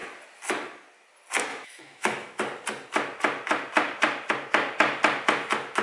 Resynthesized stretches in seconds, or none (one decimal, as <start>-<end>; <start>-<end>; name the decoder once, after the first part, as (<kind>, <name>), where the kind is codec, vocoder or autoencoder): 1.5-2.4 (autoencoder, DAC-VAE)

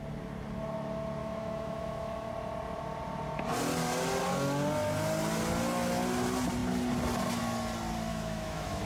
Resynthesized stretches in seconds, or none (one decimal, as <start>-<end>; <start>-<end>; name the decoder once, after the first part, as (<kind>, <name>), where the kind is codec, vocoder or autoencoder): 1.2-2.3 (autoencoder, DAC-VAE); 8.1-8.9

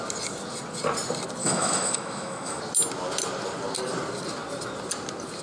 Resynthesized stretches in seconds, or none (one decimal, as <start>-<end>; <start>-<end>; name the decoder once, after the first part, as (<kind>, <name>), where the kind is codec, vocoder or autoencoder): 1.4-2.6 (autoencoder, DAC-VAE)

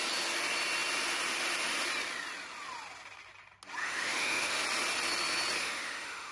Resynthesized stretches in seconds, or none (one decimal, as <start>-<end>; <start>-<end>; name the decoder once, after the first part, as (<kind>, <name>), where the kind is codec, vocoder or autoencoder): 3.8-4.6 (autoencoder, DAC-VAE); 5.6-6.3

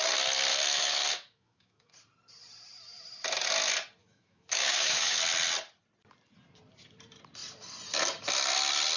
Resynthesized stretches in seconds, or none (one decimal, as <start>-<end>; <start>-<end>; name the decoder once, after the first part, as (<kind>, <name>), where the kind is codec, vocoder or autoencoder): 0.5-1.9 (autoencoder, DAC-VAE); 4.0-5.2